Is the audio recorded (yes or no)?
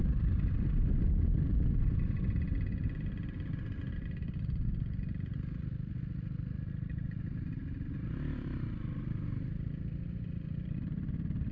no